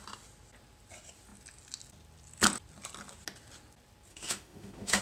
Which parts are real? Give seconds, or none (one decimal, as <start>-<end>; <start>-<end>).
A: 0.0-4.1